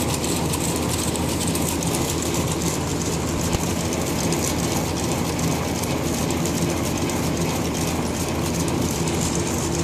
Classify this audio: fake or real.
real